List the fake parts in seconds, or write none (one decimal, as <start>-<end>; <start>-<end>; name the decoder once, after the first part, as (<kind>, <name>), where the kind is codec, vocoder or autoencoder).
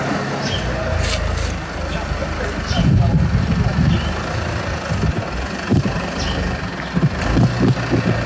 none